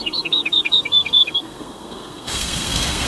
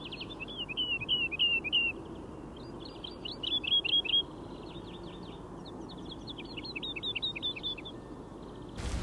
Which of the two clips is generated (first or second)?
first